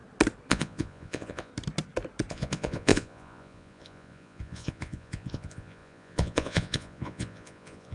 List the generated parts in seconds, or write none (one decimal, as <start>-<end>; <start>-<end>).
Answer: 0.5-1.5; 2.3-7.9